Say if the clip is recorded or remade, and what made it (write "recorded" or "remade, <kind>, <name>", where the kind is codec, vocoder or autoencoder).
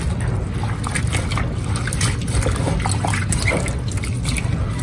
recorded